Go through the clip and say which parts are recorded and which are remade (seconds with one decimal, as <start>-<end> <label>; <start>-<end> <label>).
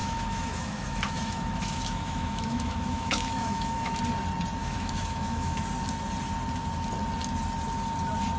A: 0.0-4.0 remade; 4.0-4.6 recorded; 4.6-5.6 remade; 5.6-8.4 recorded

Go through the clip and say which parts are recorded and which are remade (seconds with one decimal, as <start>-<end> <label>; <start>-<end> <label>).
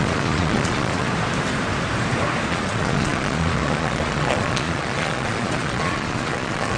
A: 0.0-1.1 remade; 1.1-2.5 recorded; 2.5-6.8 remade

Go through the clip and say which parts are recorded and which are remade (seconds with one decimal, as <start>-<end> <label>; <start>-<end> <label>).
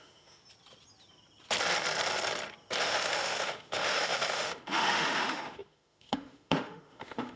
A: 0.0-0.4 remade; 0.4-2.8 recorded; 2.8-7.4 remade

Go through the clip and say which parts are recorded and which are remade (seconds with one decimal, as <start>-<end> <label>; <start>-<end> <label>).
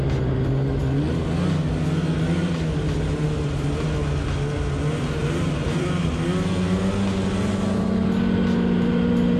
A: 0.0-5.2 recorded; 5.2-6.1 remade; 6.1-9.4 recorded